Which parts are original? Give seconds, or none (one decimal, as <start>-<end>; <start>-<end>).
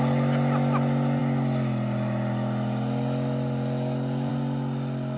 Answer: 0.0-5.2